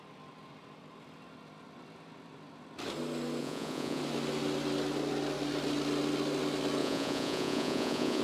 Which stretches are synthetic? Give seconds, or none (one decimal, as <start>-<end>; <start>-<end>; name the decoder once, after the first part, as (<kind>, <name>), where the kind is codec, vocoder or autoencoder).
3.4-4.0 (vocoder, Vocos); 6.8-8.2